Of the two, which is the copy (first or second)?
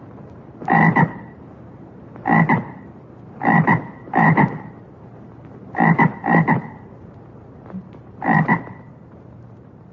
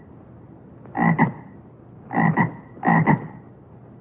first